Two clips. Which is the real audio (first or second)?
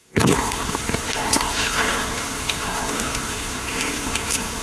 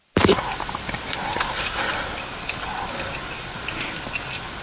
second